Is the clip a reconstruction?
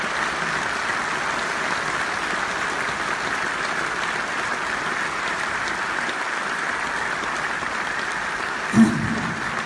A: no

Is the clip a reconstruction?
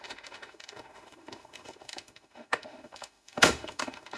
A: yes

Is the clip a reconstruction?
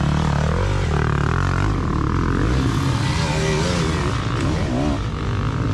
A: no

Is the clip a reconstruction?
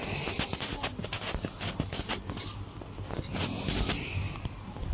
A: no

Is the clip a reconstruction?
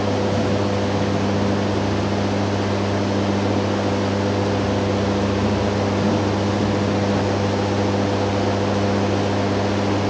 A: no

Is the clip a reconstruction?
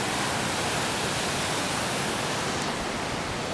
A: no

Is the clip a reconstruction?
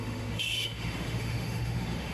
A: yes